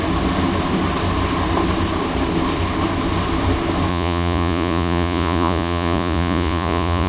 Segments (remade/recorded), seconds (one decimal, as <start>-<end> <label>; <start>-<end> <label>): 0.0-3.9 recorded; 3.9-7.1 remade